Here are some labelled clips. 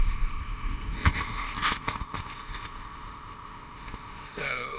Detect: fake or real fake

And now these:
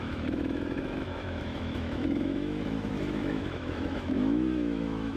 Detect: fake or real fake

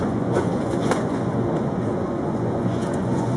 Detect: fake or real fake